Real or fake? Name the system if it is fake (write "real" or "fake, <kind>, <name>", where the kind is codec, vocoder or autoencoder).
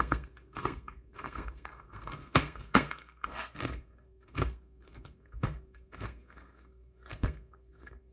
fake, codec, SNAC